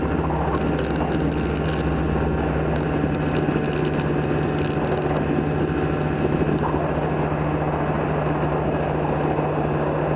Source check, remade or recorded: recorded